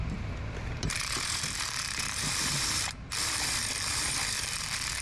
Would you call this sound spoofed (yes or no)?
yes